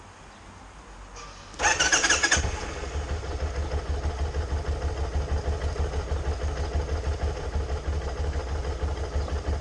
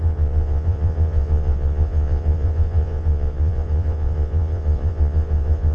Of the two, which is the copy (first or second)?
second